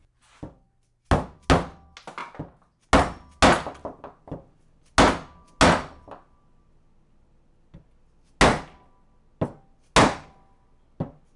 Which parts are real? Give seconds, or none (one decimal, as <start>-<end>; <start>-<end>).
0.0-11.4